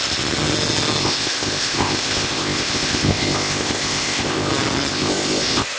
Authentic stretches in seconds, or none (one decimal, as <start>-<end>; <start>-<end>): 0.0-1.0; 4.5-4.9